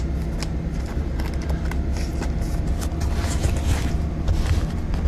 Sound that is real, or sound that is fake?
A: real